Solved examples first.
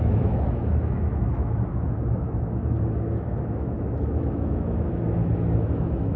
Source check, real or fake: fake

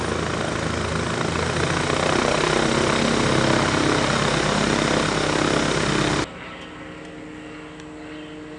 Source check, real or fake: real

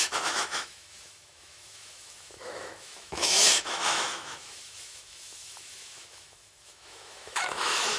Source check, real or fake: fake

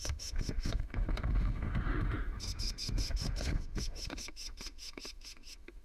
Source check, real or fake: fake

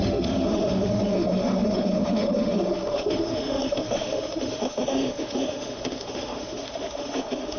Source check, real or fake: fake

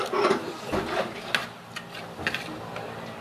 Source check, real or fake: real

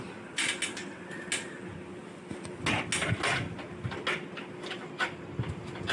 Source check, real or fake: real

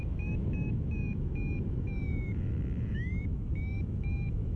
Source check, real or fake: fake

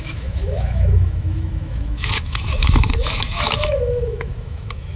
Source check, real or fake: fake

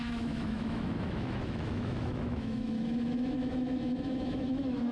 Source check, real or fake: fake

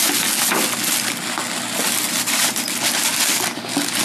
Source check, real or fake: real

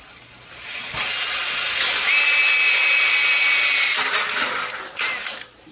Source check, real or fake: real